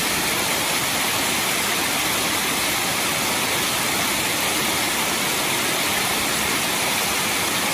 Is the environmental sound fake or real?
real